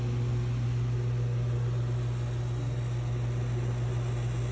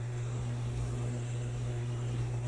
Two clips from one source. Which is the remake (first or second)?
second